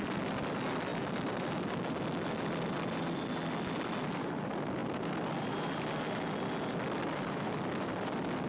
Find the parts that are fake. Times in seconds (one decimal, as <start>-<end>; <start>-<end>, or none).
none